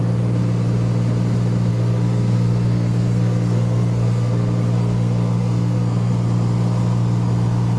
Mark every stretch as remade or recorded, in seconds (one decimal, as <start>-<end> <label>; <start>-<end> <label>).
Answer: 0.0-1.7 recorded; 1.7-6.1 remade; 6.1-7.8 recorded